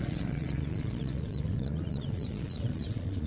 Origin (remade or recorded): remade